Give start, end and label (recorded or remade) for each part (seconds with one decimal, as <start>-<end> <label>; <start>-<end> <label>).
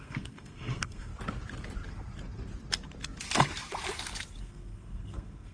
0.0-1.1 remade; 1.1-4.4 recorded; 4.4-5.5 remade